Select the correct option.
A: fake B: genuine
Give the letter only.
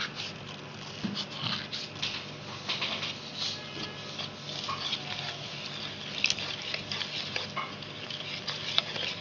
B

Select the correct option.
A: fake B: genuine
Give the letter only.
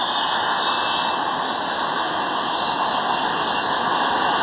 B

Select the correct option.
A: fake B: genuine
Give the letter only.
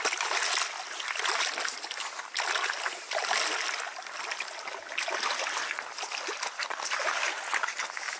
B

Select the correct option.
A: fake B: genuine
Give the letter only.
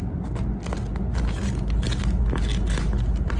B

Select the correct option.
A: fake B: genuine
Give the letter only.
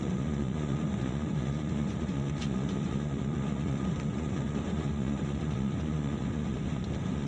A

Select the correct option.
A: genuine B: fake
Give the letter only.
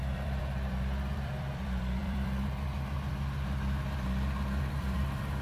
B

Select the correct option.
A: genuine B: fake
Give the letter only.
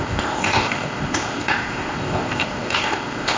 B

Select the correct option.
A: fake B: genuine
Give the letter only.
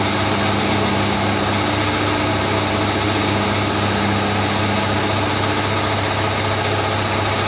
B